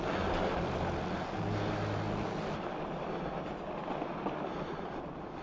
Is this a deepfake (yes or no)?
no